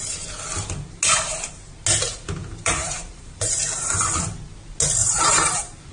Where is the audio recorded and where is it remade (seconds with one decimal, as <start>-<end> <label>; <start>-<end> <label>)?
0.0-2.4 recorded; 2.4-3.6 remade; 3.6-5.0 recorded; 5.0-5.9 remade